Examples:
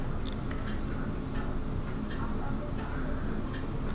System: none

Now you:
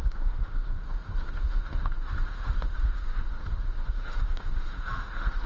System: autoencoder, DAC-VAE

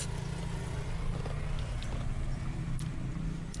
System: none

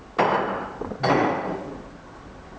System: none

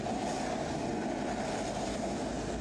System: none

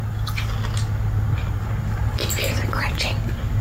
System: none